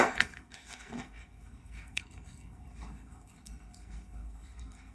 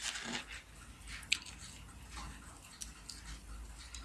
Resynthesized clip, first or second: first